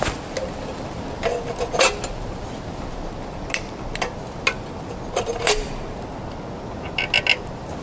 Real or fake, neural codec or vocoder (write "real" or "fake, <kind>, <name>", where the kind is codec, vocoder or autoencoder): real